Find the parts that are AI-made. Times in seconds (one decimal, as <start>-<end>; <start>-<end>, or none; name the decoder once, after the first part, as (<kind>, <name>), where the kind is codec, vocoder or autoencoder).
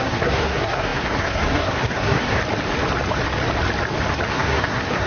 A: 0.0-2.4 (codec, SNAC); 4.3-5.1